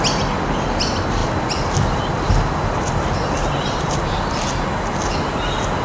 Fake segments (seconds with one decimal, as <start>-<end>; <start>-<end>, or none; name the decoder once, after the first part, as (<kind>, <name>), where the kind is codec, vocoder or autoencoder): 1.2-3.9 (vocoder, BigVGAN v2)